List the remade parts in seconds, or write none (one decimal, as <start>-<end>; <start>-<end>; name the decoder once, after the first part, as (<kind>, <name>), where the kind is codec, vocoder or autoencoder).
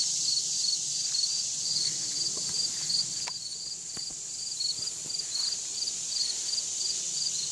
1.3-2.0 (vocoder, BigVGAN v2)